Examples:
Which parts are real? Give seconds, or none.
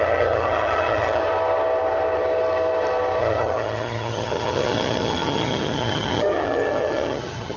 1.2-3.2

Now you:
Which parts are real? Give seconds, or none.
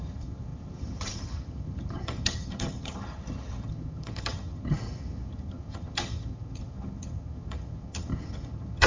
none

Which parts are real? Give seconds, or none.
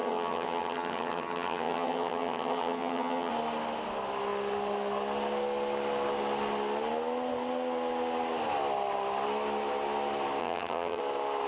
3.3-10.4; 11.0-11.5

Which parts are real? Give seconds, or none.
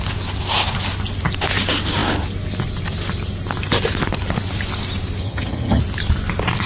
0.0-5.2; 5.8-6.7